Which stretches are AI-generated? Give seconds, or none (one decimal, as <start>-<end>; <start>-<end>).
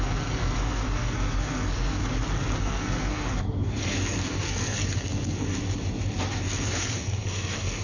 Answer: 0.0-2.0; 2.6-5.6; 6.3-7.8